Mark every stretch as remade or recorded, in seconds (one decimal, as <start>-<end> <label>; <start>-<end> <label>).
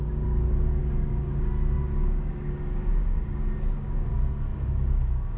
0.0-5.4 remade